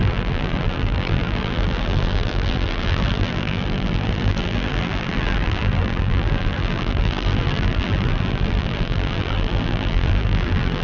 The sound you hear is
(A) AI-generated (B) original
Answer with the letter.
A